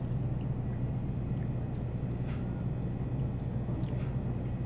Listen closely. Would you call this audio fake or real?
real